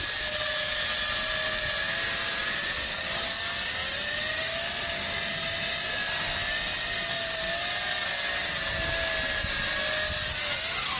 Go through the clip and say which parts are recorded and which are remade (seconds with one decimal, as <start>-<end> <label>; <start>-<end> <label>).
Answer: 0.0-11.0 recorded